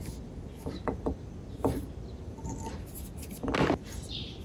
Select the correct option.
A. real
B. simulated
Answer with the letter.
A